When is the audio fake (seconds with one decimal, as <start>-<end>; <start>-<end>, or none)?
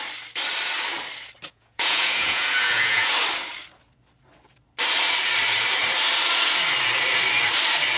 1.5-3.1